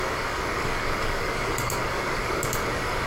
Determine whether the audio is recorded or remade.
remade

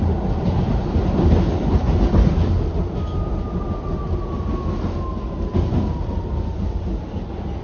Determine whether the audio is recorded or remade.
recorded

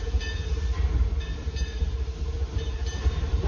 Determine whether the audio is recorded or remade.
recorded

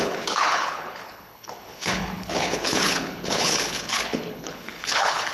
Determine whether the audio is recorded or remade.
remade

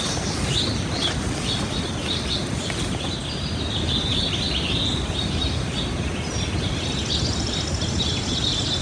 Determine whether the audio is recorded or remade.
recorded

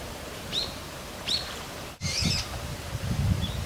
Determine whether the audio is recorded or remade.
remade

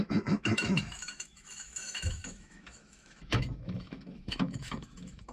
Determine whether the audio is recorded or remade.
remade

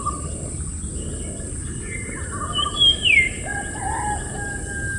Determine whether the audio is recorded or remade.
recorded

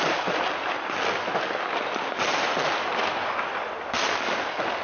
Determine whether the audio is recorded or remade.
recorded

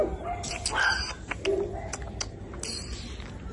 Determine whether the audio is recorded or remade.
recorded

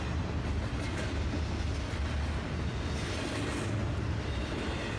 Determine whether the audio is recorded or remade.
recorded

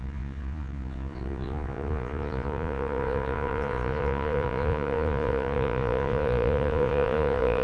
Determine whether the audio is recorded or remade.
remade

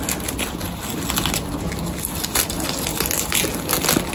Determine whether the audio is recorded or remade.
recorded